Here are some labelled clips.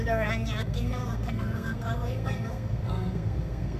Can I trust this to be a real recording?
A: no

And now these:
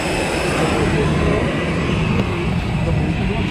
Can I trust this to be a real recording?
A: yes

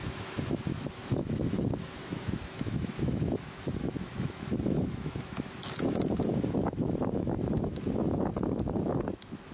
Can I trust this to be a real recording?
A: no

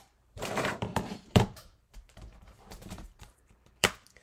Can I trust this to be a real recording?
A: no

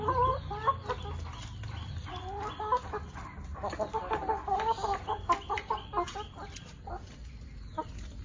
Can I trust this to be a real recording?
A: yes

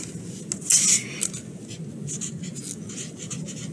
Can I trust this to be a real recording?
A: yes